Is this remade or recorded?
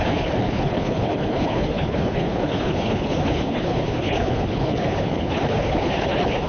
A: remade